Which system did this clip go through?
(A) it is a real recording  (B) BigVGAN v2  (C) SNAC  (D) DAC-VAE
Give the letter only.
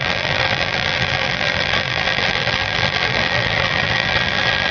B